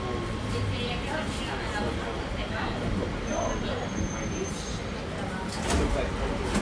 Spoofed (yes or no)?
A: no